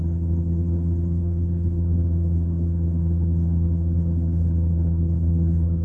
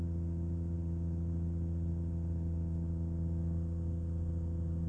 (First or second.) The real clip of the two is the second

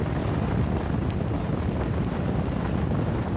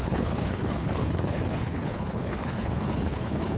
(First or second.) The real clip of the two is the first